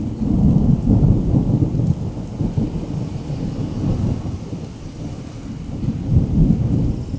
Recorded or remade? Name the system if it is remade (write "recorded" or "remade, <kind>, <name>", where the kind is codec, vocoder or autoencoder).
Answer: recorded